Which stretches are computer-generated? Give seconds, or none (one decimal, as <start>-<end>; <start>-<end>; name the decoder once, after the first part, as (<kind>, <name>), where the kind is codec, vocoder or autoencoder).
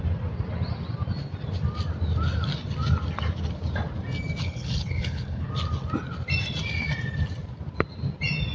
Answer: 4.4-5.5 (codec, HILCodec)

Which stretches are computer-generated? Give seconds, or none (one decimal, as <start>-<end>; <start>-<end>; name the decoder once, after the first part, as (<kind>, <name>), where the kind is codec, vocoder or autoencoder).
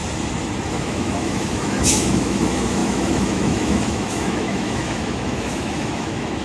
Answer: 0.7-6.4 (autoencoder, DAC-VAE)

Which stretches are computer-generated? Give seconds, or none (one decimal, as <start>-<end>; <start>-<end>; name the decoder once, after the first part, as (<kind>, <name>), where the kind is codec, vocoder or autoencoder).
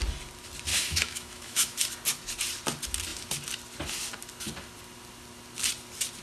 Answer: 0.7-1.8 (autoencoder, DAC-VAE)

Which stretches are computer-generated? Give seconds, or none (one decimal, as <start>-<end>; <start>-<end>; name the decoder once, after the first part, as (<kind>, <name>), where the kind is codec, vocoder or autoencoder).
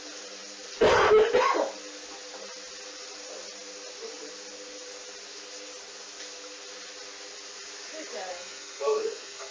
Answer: 8.3-9.5 (codec, SNAC)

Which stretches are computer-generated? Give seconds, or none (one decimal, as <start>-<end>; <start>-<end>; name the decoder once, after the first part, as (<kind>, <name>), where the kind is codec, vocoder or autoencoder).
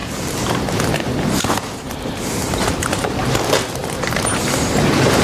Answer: 0.0-3.1 (vocoder, BigVGAN v2); 3.8-5.2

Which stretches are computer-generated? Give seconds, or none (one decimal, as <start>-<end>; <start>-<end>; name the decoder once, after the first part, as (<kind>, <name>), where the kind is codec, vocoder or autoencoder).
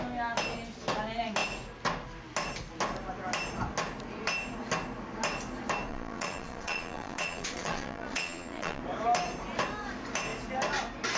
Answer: 5.9-8.8 (vocoder, Vocos)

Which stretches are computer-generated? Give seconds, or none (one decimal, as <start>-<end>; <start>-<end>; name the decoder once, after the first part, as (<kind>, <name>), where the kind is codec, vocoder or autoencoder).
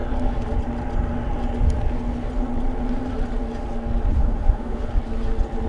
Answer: 4.1-4.9 (autoencoder, DAC-VAE)